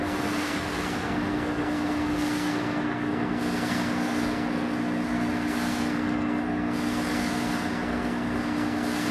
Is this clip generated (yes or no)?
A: yes